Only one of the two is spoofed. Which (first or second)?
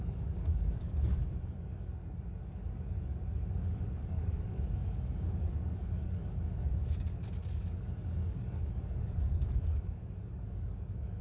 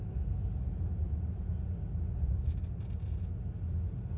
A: first